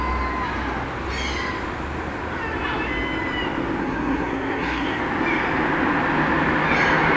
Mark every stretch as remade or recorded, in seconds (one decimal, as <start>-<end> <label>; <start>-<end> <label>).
0.0-3.8 recorded; 3.8-5.0 remade; 5.0-7.2 recorded